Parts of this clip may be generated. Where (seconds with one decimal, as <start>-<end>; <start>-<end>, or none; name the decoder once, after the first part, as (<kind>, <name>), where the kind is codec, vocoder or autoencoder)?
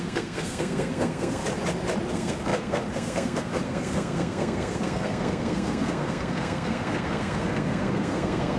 0.0-1.4 (codec, SNAC); 2.1-8.6